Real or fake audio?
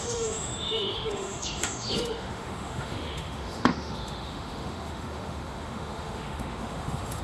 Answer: fake